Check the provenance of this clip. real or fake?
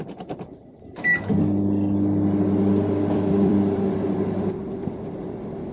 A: fake